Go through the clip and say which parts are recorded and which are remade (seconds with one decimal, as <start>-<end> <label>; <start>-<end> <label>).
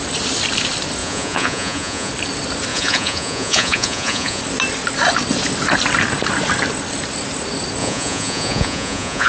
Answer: 0.0-1.0 recorded; 1.0-2.1 remade; 2.1-2.7 recorded; 2.7-4.4 remade; 4.4-7.8 recorded; 7.8-9.3 remade